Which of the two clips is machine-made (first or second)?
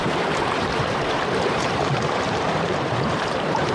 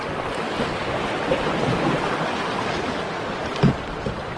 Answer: first